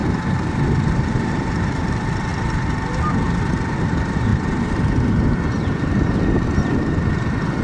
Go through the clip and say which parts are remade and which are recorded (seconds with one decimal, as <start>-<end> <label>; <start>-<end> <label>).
0.0-2.3 remade; 2.3-3.5 recorded; 3.5-4.3 remade; 4.3-7.6 recorded